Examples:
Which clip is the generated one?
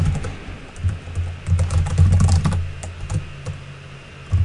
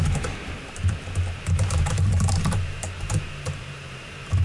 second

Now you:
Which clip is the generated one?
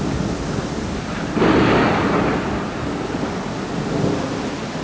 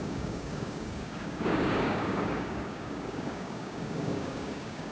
second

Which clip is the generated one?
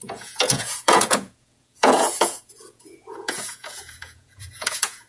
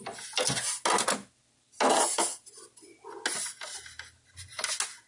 first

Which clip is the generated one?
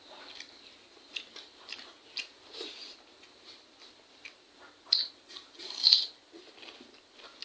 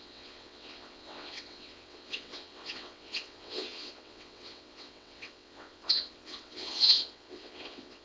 second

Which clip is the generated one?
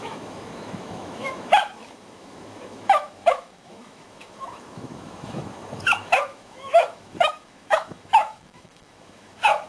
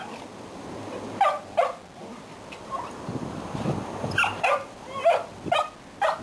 first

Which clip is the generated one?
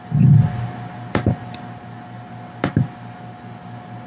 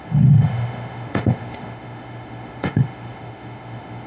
second